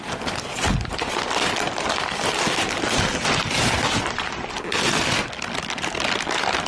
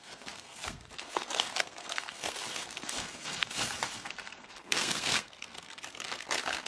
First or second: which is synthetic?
second